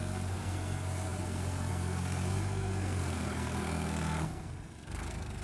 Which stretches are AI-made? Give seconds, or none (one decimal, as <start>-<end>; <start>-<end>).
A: 0.0-5.4